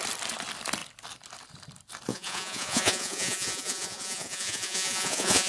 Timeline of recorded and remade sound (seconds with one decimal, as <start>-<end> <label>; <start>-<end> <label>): 0.0-2.1 recorded; 2.1-5.5 remade